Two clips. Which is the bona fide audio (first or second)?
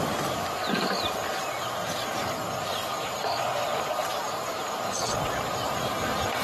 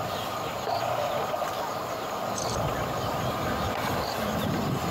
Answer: first